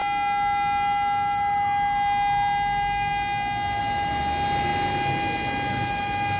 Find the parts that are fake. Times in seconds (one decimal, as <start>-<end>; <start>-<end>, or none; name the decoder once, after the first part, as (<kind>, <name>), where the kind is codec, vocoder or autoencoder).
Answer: none